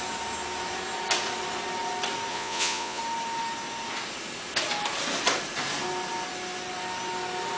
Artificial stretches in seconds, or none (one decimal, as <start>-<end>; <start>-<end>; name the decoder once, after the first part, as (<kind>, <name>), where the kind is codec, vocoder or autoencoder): 2.3-3.0 (vocoder, Vocos)